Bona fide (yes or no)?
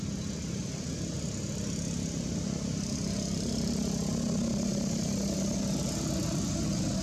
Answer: yes